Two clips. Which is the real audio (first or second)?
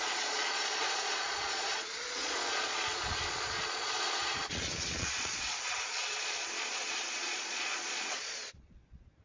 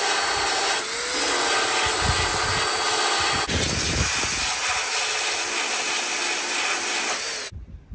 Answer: second